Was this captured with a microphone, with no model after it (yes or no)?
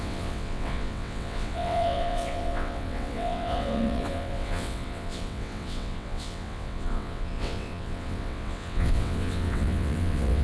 no